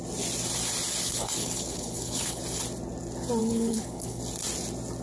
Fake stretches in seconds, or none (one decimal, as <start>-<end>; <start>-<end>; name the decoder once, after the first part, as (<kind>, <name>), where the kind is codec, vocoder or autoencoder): 1.0-2.4 (codec, HILCodec); 3.4-4.2